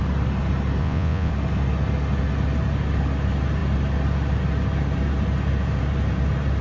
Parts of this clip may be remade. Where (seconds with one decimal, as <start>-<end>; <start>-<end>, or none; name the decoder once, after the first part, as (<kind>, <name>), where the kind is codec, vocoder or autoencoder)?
0.8-1.3 (vocoder, Vocos)